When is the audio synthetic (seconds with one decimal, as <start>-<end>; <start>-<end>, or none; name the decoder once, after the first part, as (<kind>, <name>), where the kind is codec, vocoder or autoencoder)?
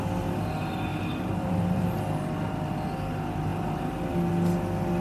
0.9-2.0 (vocoder, BigVGAN v2)